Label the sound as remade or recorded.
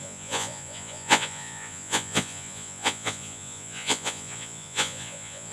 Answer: remade